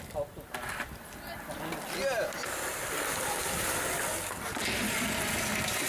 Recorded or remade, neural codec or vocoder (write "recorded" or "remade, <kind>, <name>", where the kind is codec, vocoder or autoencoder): recorded